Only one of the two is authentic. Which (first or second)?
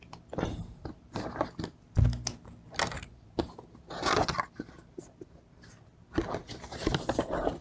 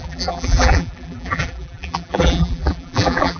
first